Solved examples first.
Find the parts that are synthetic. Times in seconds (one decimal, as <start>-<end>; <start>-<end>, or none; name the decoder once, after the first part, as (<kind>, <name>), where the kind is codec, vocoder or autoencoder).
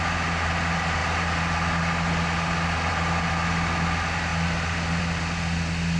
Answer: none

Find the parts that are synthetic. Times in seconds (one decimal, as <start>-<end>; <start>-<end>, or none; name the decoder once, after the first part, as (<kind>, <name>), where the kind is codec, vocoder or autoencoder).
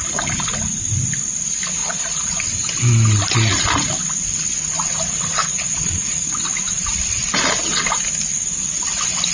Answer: 1.8-2.3 (vocoder, Vocos); 5.4-6.3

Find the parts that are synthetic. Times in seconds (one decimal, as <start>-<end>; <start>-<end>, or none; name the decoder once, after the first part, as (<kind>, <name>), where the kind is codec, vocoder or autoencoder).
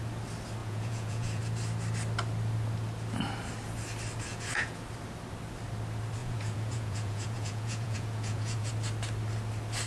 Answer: 0.6-1.4 (vocoder, Vocos); 4.3-4.8; 6.2-8.7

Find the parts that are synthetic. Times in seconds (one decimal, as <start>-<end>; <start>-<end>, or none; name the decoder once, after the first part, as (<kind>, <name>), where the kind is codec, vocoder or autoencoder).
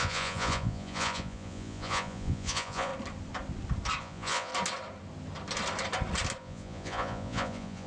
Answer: 0.0-2.9 (vocoder, Vocos); 4.0-4.5; 6.4-7.9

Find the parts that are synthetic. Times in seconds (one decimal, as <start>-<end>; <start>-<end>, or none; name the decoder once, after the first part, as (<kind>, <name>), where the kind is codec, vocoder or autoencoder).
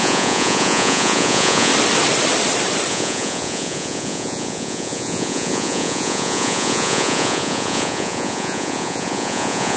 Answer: 0.0-1.7 (vocoder, Vocos); 2.9-9.8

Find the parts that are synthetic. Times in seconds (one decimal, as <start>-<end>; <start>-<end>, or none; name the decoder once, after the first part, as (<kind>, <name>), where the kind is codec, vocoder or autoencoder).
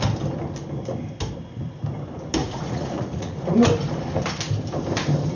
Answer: 2.4-3.7 (vocoder, Vocos)